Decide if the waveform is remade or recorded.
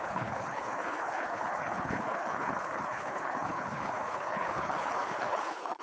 remade